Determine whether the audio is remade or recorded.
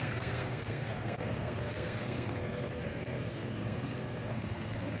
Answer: remade